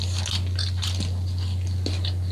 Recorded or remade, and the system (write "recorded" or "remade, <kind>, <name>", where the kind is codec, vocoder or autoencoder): recorded